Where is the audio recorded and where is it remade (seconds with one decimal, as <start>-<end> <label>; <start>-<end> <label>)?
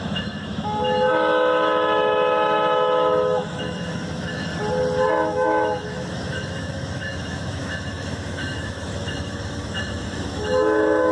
0.0-4.5 remade; 4.5-5.1 recorded; 5.1-11.1 remade